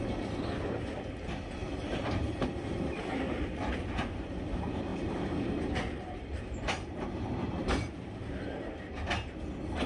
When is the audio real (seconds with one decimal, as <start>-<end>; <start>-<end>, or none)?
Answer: 0.0-1.6; 3.6-4.9; 8.7-9.9